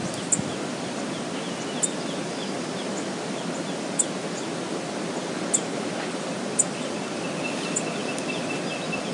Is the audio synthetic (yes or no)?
no